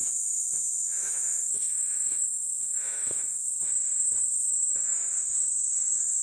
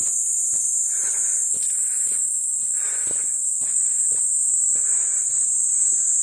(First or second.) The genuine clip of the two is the second